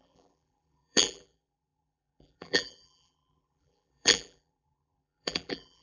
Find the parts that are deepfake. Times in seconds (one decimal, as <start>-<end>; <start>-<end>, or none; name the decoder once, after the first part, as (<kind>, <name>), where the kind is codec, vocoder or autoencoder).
0.0-5.8 (vocoder, BigVGAN v2)